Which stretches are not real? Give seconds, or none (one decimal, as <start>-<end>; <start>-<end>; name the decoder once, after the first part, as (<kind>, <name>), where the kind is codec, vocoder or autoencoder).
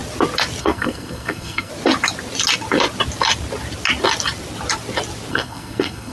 0.6-1.7 (codec, SNAC); 5.3-6.1